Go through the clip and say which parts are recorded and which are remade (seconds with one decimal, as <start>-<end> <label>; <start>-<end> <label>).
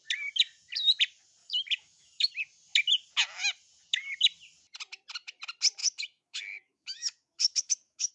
0.0-1.4 recorded; 1.4-2.3 remade; 2.3-5.8 recorded; 5.8-8.1 remade